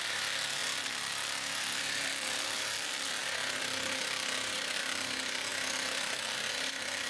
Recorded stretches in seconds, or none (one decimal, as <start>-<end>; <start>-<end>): 0.6-2.0; 3.2-4.5; 5.5-6.5